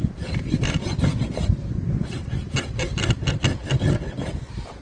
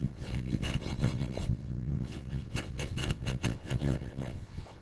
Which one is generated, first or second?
second